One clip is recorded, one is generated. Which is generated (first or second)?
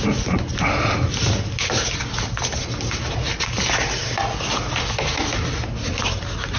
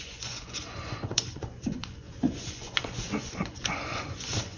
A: second